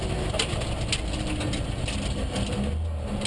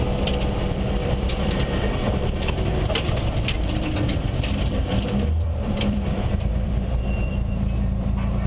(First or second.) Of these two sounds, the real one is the first